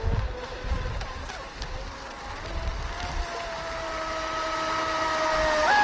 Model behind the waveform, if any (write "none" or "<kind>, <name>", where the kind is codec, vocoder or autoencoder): none